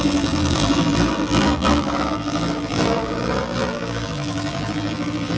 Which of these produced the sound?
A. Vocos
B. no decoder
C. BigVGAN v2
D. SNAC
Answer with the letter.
C